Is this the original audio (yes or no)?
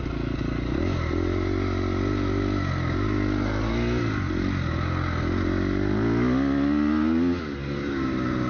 yes